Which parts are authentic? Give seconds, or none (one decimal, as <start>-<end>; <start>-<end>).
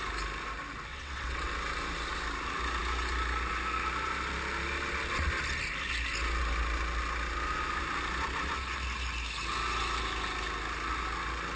0.0-0.9; 1.5-11.6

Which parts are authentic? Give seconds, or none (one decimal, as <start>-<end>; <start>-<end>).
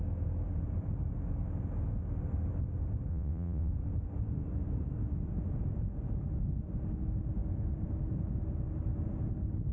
0.0-3.1; 3.7-9.7